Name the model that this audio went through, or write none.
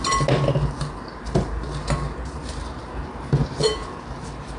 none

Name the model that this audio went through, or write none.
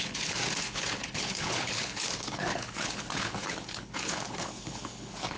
codec, HILCodec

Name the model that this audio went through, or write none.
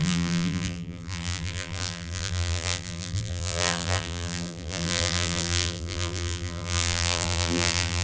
vocoder, BigVGAN v2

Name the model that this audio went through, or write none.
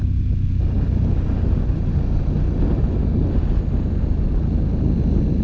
none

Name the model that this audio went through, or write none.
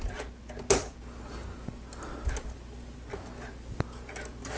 none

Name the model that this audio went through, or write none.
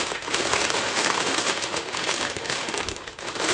autoencoder, DAC-VAE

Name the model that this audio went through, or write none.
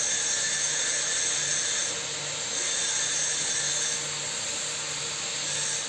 none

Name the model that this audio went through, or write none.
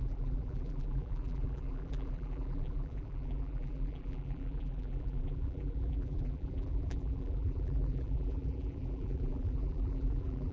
vocoder, BigVGAN v2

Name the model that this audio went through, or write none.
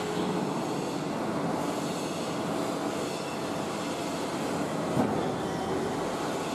none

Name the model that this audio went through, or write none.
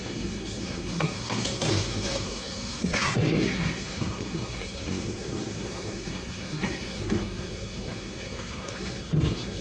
codec, SNAC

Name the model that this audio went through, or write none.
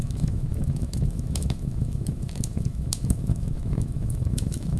autoencoder, DAC-VAE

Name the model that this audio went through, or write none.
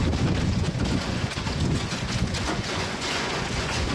vocoder, Vocos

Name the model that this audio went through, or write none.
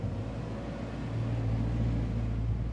none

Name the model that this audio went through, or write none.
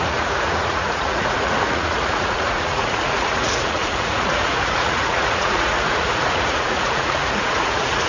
vocoder, Vocos